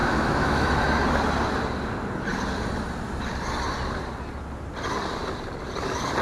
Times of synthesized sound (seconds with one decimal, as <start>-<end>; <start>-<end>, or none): 0.0-0.7